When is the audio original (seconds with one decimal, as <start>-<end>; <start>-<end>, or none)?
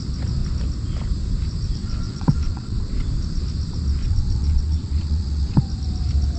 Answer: 0.0-1.8; 3.1-4.0; 5.6-6.4